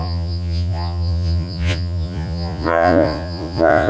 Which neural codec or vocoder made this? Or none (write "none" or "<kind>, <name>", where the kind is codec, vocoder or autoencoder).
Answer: vocoder, Vocos